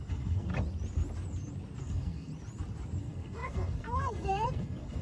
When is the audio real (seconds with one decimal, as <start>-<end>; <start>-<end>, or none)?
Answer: 0.5-1.8; 2.3-3.0